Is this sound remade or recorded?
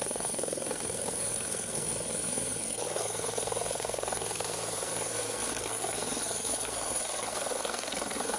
remade